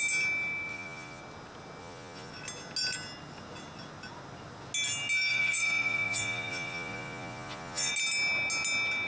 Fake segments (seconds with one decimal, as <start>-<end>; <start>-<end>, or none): 0.7-1.2; 1.8-2.3; 5.3-7.9